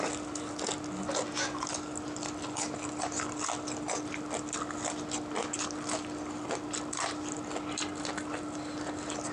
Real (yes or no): yes